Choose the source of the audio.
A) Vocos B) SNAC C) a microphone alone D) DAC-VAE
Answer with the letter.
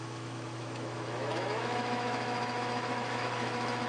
D